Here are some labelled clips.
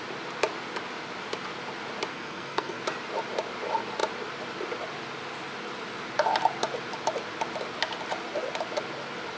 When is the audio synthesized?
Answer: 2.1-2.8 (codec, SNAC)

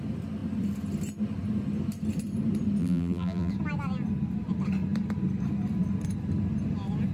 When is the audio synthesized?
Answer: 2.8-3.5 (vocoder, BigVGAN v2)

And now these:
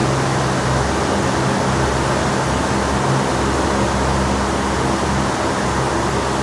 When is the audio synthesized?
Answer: none